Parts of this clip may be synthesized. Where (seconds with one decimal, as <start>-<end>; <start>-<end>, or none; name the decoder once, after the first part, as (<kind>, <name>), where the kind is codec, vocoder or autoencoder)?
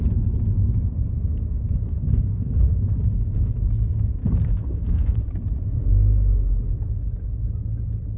1.3-3.5 (codec, DAC); 4.2-5.2